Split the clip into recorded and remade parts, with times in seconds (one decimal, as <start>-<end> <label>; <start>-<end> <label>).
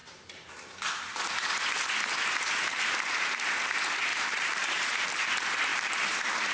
0.0-0.5 remade; 0.5-4.1 recorded; 4.1-5.0 remade; 5.0-5.7 recorded; 5.7-6.5 remade